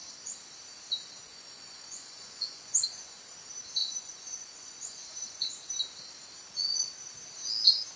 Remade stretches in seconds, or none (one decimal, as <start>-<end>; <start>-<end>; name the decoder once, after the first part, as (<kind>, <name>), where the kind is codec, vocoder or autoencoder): 1.3-3.2 (vocoder, Vocos); 3.8-5.7